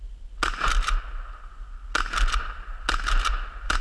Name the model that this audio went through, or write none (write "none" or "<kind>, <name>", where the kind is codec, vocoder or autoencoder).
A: none